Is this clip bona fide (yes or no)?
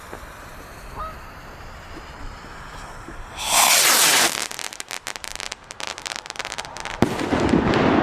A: yes